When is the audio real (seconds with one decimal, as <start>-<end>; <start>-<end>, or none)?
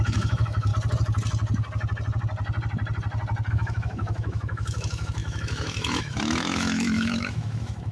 0.7-3.5